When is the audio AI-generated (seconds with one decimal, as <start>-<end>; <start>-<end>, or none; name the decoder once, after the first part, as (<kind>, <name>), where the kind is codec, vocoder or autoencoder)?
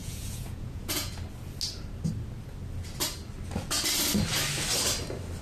0.0-1.1 (vocoder, Vocos)